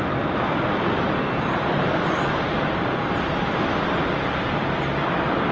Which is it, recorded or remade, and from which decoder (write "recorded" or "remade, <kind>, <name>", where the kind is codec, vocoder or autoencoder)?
recorded